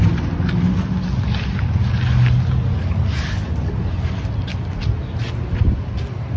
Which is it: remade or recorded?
recorded